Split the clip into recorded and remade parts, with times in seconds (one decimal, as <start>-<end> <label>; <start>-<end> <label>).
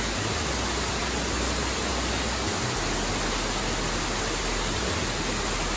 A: 0.0-5.8 recorded